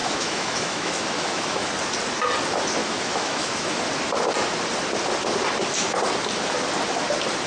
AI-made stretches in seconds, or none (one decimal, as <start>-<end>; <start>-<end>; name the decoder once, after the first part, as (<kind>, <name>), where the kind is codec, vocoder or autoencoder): 0.0-1.7 (autoencoder, DAC-VAE); 2.8-3.8